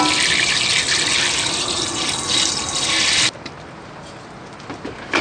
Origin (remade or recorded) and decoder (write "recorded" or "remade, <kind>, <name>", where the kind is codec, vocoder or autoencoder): recorded